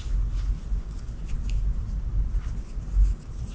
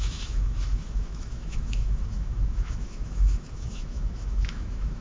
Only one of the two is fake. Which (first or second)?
second